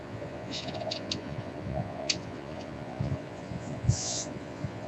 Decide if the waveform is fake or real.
fake